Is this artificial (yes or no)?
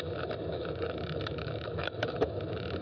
yes